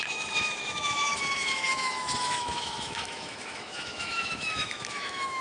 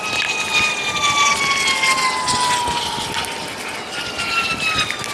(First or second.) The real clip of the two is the second